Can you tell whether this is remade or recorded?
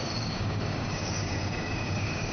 remade